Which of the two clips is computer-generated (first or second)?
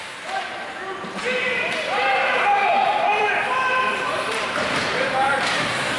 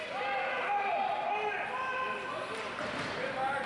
first